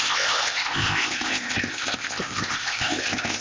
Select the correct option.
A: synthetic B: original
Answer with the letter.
A